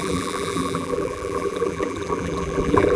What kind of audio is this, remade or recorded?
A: remade